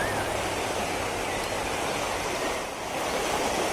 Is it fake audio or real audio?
real